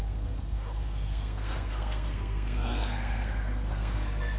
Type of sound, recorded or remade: remade